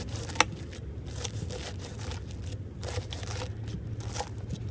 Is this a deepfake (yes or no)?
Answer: no